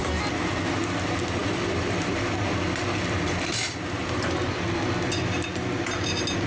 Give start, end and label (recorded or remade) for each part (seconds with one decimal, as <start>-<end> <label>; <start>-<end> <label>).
0.0-1.4 recorded; 1.4-2.2 remade; 2.2-6.5 recorded